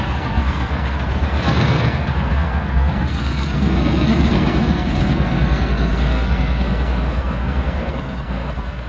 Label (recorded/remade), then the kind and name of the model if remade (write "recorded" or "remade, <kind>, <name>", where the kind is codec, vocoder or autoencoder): remade, codec, SNAC